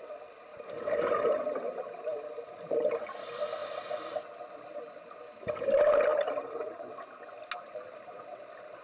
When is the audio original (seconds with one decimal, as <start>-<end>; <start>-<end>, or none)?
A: 0.0-0.5; 1.4-6.1; 6.9-8.8